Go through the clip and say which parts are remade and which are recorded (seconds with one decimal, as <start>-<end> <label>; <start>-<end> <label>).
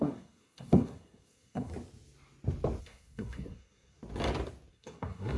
0.0-1.7 remade; 1.7-2.8 recorded; 2.8-4.0 remade; 4.0-4.7 recorded; 4.7-5.4 remade